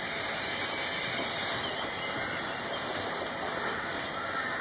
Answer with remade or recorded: recorded